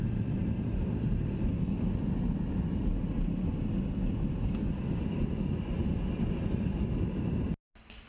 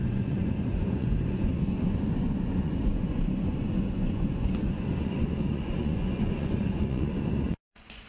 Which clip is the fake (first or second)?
second